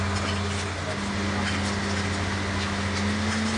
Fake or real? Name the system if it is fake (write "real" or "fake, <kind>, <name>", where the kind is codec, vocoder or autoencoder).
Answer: real